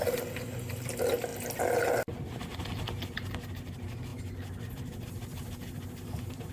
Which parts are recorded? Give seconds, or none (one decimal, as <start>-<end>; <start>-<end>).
0.0-6.5